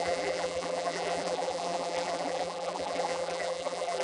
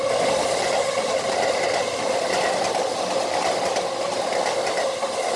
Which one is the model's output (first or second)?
first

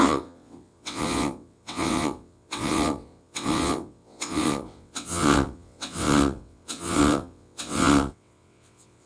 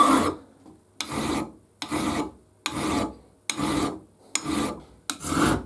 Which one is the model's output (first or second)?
first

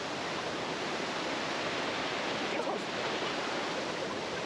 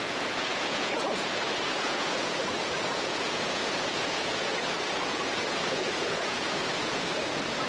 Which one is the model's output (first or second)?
second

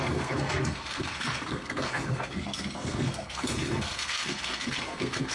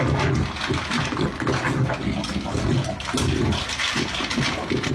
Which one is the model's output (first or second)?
first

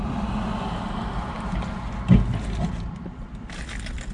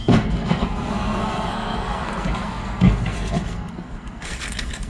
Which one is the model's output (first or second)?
second